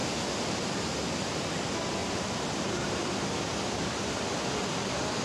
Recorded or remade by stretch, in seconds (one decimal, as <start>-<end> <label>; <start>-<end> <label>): 0.0-0.8 remade; 0.8-2.0 recorded; 2.0-3.2 remade; 3.2-5.2 recorded